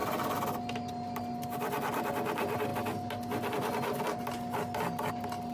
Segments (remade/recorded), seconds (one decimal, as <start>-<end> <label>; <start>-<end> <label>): 0.0-5.5 recorded